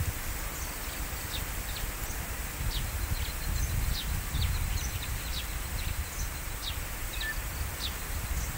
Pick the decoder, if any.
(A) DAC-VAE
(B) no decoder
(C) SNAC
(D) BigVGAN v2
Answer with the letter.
B